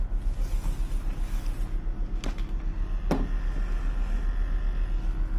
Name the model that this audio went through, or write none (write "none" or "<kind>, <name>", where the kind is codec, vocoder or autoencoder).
none